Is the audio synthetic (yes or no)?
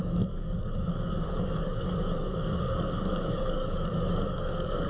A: yes